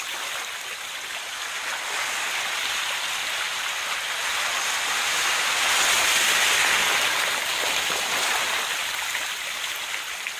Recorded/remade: recorded